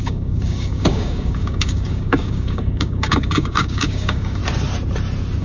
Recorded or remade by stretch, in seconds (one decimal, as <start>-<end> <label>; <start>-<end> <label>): 0.0-4.4 remade; 4.4-5.4 recorded